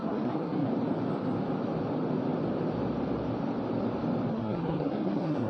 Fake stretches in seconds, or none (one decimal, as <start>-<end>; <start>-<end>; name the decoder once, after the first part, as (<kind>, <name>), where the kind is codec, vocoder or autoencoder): 0.0-0.7 (codec, SNAC); 4.3-5.5